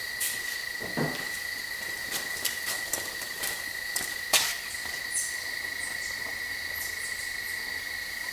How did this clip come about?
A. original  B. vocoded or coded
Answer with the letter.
A